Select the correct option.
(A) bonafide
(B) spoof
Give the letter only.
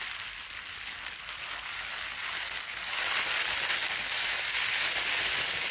A